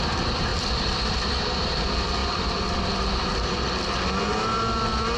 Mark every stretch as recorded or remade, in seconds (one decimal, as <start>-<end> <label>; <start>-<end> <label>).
0.0-2.2 recorded; 2.2-4.2 remade; 4.2-5.2 recorded